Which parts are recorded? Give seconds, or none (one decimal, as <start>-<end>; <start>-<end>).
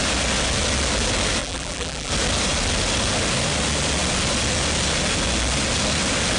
0.0-1.4; 2.1-6.4